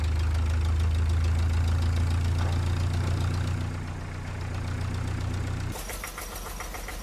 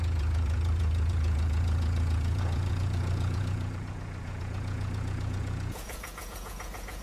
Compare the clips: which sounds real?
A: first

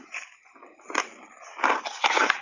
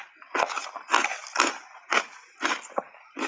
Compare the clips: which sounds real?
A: second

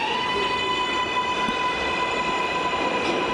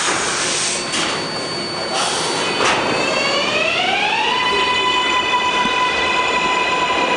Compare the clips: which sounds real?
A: first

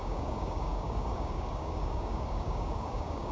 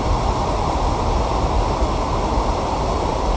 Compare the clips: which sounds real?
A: second